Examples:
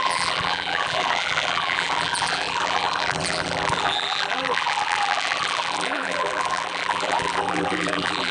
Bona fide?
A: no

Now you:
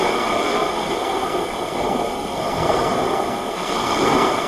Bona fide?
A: no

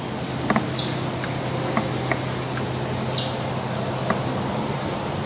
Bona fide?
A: yes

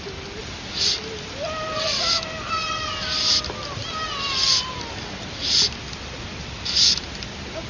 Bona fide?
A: yes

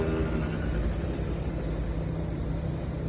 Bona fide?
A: yes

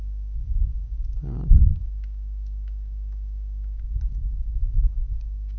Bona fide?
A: no